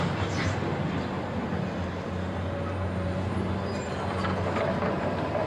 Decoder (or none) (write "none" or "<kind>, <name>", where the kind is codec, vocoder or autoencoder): none